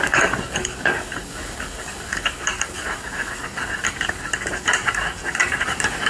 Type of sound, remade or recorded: remade